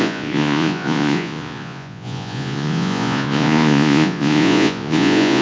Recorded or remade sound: remade